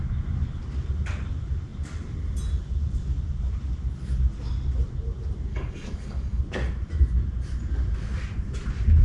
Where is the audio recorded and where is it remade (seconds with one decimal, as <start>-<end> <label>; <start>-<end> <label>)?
0.0-5.5 recorded; 5.5-6.4 remade; 6.4-9.0 recorded